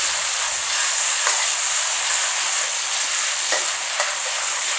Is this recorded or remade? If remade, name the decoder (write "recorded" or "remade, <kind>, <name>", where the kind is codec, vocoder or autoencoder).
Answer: recorded